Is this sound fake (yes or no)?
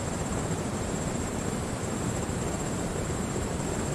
yes